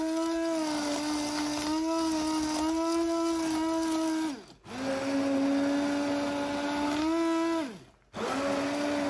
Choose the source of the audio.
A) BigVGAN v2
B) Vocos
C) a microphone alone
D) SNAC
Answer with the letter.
C